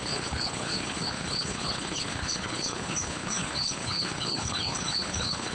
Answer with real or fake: fake